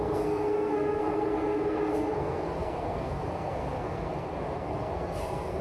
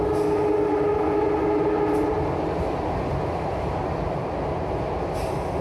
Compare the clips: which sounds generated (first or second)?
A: first